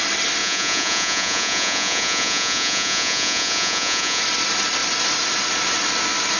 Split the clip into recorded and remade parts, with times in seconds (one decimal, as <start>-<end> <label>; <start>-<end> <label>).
0.0-0.4 recorded; 0.4-4.2 remade; 4.2-6.4 recorded